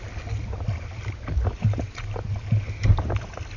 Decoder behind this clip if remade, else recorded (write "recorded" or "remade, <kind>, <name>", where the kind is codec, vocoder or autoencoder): recorded